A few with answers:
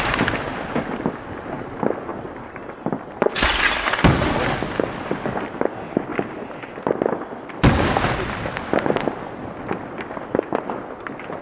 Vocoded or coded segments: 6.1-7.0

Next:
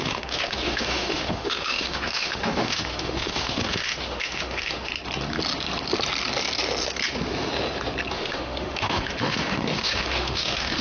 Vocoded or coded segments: 0.0-4.9; 8.1-10.8